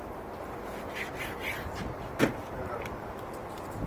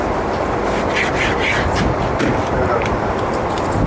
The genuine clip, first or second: first